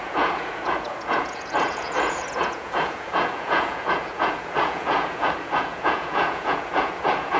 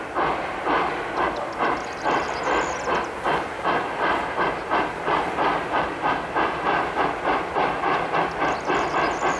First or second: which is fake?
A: first